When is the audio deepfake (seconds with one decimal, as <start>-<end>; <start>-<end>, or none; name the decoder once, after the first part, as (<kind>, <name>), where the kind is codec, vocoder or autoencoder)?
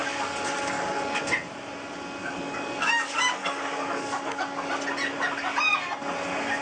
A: 0.0-1.2 (codec, DAC); 2.2-4.7